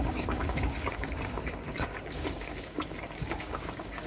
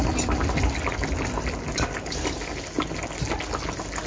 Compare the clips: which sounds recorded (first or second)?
second